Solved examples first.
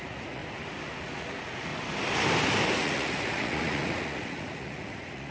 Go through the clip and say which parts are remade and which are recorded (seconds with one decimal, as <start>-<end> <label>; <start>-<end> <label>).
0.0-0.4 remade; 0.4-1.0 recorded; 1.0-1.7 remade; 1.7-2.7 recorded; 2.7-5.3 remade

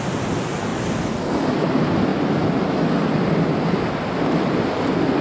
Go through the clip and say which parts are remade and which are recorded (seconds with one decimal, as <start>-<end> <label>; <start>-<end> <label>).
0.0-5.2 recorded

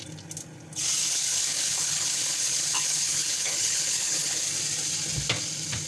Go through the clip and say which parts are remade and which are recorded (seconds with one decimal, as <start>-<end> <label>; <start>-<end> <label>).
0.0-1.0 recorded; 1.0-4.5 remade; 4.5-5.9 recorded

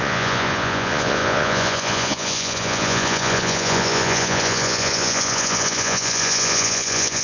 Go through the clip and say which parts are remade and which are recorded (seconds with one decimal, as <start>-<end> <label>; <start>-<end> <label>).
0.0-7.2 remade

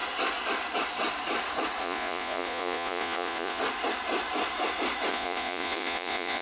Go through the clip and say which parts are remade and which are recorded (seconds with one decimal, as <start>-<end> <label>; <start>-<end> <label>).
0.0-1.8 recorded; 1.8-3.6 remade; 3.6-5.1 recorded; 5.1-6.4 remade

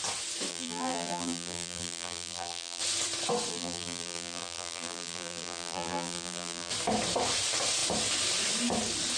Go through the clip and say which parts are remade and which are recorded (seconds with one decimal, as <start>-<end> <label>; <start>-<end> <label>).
0.0-0.5 recorded; 0.5-2.8 remade; 2.8-3.5 recorded; 3.5-6.7 remade; 6.7-9.2 recorded